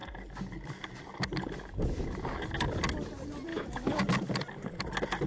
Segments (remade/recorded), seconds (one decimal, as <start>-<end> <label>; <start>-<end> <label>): 0.0-3.5 recorded; 3.5-4.0 remade; 4.0-5.3 recorded